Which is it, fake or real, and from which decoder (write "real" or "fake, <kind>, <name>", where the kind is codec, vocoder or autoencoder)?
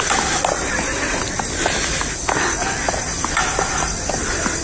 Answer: real